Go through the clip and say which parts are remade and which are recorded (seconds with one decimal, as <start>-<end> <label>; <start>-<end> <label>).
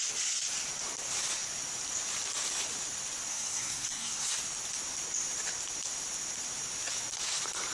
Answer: 0.0-3.3 recorded; 3.3-4.3 remade; 4.3-7.7 recorded